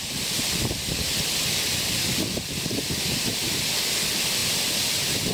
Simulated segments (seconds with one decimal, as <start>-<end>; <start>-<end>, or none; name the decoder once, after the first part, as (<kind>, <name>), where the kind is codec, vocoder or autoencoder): none